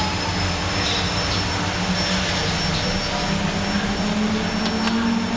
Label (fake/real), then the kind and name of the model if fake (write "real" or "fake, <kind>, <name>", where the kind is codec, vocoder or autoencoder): real